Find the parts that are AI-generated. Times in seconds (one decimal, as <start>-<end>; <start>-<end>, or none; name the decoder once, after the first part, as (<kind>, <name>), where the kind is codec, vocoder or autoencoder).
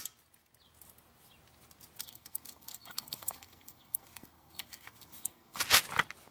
2.0-5.6 (codec, SNAC)